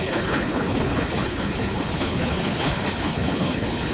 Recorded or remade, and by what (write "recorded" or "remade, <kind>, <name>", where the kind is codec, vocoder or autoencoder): remade, codec, HILCodec